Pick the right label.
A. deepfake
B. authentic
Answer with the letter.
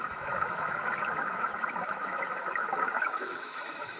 A